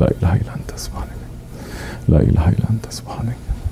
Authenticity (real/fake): fake